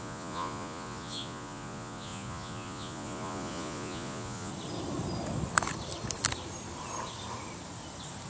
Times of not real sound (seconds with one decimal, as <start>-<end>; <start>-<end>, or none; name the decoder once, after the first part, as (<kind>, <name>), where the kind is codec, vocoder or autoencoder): 0.0-4.5 (vocoder, Vocos)